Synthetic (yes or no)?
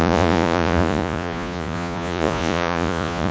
yes